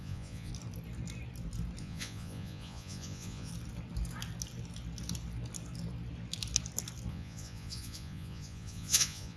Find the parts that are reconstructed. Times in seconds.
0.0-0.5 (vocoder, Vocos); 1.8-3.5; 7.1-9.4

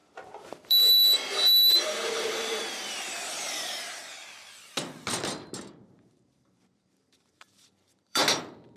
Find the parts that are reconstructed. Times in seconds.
0.0-4.0 (vocoder, BigVGAN v2); 5.7-8.2

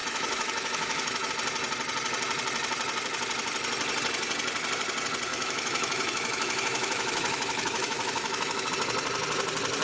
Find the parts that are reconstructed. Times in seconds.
0.0-1.3 (autoencoder, DAC-VAE); 5.3-8.7

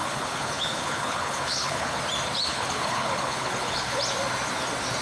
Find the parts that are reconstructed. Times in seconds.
0.0-2.0 (codec, HILCodec); 2.5-4.0

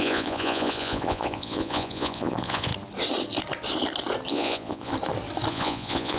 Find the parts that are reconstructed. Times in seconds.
0.0-2.7 (vocoder, Vocos); 4.3-4.9; 5.5-6.2